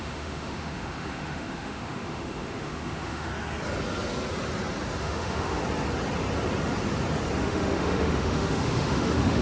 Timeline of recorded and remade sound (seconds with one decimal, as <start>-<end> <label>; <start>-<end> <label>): 0.0-3.3 remade; 3.3-5.0 recorded; 5.0-5.6 remade; 5.6-7.4 recorded; 7.4-9.4 remade